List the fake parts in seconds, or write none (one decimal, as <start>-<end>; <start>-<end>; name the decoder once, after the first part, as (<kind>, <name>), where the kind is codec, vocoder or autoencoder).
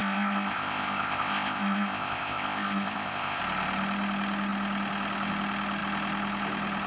0.0-3.4 (codec, ZipCodec)